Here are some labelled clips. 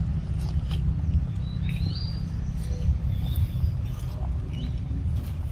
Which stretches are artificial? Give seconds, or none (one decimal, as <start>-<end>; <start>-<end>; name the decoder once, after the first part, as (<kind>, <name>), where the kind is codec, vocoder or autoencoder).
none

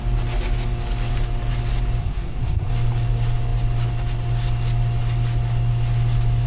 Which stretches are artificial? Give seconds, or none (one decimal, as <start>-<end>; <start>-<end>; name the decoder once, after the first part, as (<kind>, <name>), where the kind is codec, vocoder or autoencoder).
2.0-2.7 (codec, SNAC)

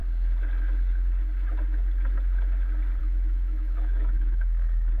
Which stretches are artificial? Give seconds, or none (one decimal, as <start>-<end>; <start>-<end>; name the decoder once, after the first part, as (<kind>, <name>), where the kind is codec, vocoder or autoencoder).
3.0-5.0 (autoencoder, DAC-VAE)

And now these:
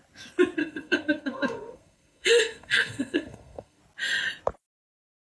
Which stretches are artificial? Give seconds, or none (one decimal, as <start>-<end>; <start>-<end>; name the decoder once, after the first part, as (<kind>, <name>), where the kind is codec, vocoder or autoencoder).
0.6-3.8 (codec, SNAC)